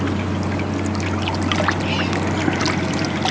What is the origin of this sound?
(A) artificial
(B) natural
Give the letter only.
B